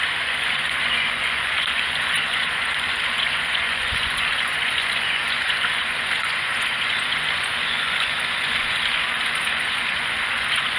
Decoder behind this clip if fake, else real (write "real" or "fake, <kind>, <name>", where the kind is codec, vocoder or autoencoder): fake, vocoder, Vocos